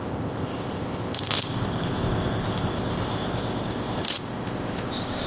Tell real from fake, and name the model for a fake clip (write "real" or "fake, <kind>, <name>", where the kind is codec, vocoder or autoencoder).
fake, codec, ZipCodec